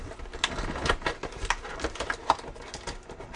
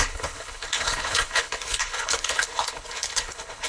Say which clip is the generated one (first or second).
second